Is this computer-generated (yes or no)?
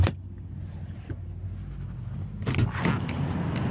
no